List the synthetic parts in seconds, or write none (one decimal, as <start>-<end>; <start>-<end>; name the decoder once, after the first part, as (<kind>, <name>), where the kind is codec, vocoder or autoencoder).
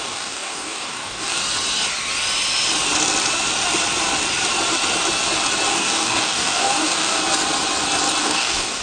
0.0-1.4 (codec, DAC); 5.7-7.2; 8.2-8.8